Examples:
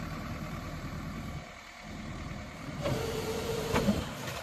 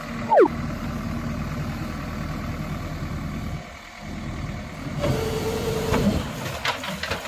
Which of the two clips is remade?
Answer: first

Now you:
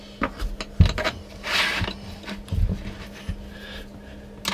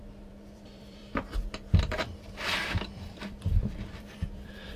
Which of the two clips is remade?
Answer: second